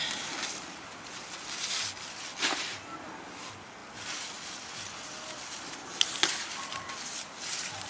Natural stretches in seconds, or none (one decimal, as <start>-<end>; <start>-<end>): 0.0-7.9